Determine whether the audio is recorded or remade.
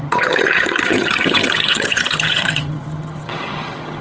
remade